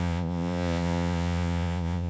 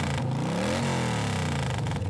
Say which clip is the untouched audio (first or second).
second